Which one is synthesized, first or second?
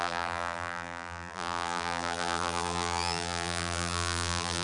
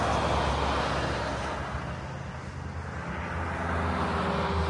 first